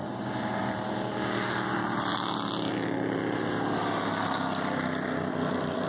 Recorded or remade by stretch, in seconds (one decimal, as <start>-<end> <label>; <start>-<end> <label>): 0.0-0.6 recorded; 0.6-2.1 remade; 2.1-5.3 recorded; 5.3-5.9 remade